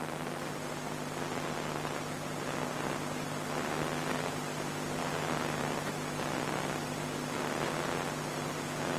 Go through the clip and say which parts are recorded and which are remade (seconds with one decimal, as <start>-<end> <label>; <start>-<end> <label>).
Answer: 0.0-9.0 recorded